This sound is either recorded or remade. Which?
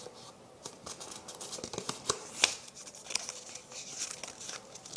recorded